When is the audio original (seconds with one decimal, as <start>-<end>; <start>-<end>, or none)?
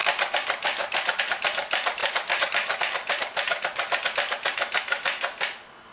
0.0-2.0; 2.8-5.9